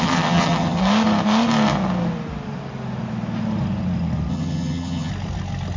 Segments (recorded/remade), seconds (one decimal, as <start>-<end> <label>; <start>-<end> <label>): 0.0-0.8 remade; 0.8-4.3 recorded; 4.3-5.1 remade; 5.1-5.8 recorded